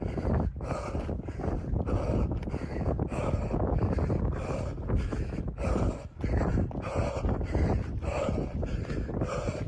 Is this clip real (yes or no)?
yes